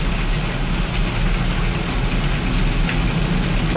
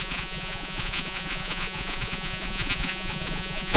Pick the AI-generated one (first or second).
second